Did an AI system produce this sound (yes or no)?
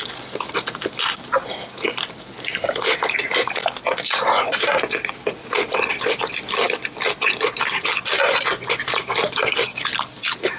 no